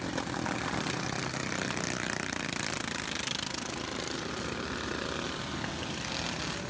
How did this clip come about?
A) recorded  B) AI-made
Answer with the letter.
A